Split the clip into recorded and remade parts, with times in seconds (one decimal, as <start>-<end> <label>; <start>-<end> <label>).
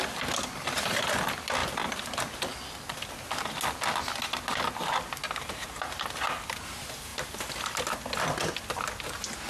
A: 0.0-7.1 recorded; 7.1-9.5 remade